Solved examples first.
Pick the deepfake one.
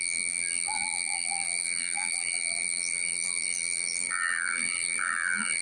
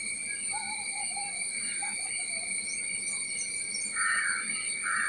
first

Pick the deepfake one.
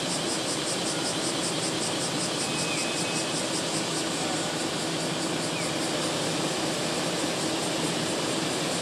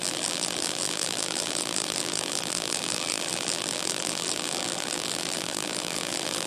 second